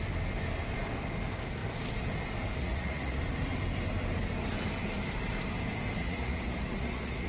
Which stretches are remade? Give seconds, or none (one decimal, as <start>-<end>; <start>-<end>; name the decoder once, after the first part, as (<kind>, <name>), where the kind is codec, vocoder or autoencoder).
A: 2.6-3.2 (vocoder, Vocos); 6.0-7.3